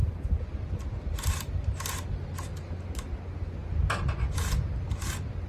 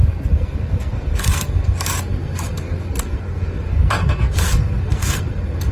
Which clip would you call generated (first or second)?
second